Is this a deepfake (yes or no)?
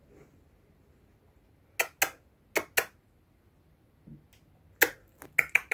no